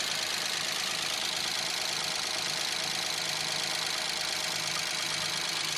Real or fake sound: real